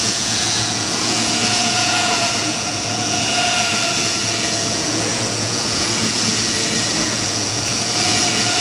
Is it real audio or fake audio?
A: fake